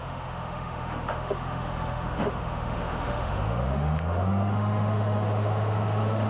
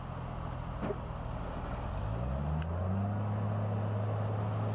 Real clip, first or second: second